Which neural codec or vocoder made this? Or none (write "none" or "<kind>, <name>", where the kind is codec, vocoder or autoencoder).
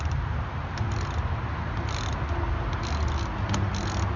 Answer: none